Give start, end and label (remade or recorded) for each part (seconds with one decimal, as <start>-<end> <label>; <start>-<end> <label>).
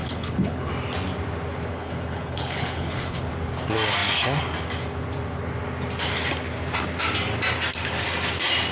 0.0-0.7 remade; 0.7-1.7 recorded; 1.7-3.3 remade; 3.3-8.7 recorded